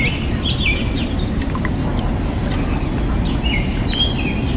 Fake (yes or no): no